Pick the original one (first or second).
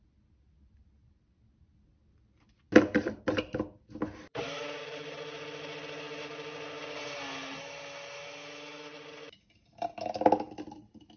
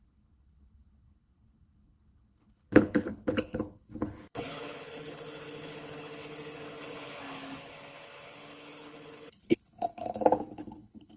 first